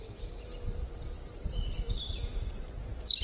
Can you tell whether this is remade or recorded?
recorded